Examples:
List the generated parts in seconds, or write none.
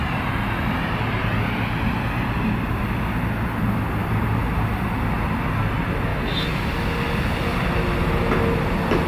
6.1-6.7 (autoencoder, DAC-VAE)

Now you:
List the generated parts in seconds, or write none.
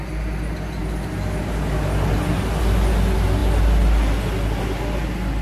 none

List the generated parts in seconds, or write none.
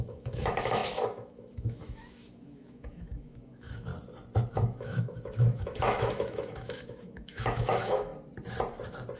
0.0-3.9 (autoencoder, DAC-VAE); 4.5-8.1